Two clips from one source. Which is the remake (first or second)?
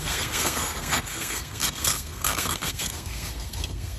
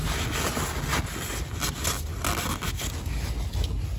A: first